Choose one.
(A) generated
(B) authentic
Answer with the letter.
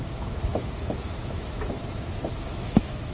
A